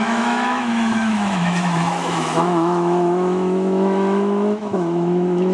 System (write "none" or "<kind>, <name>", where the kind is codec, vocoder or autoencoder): autoencoder, DAC-VAE